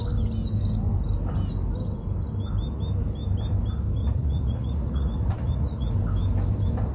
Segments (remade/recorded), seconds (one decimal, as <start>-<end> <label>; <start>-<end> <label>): 0.0-4.0 recorded; 4.0-5.9 remade; 5.9-6.9 recorded